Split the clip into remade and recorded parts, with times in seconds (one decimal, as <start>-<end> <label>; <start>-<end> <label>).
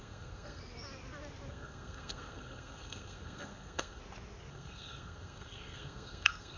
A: 0.0-0.6 remade; 0.6-1.5 recorded; 1.5-4.0 remade; 4.0-4.5 recorded; 4.5-6.6 remade